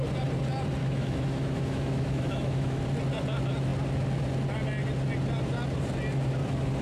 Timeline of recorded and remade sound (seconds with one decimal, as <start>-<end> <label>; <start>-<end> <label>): 0.0-0.8 recorded; 0.8-2.8 remade; 2.8-6.8 recorded